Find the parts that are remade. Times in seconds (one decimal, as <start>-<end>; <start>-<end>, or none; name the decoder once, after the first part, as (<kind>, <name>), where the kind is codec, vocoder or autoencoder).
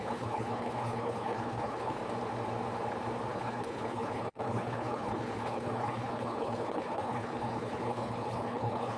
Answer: 0.0-2.0 (codec, HILCodec); 3.3-9.0